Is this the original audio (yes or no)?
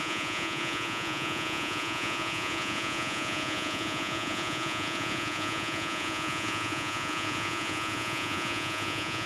no